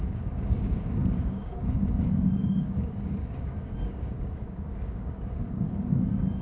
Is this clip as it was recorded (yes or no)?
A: no